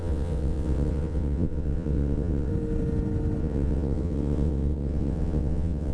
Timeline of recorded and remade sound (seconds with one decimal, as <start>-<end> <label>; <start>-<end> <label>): 0.0-2.5 remade; 2.5-3.4 recorded; 3.4-5.9 remade